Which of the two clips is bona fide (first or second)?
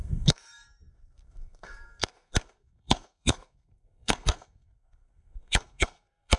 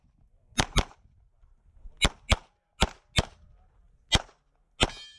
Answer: second